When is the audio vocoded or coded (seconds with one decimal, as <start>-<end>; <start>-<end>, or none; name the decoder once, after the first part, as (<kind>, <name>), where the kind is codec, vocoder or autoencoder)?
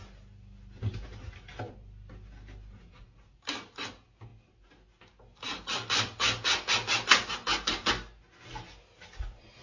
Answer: none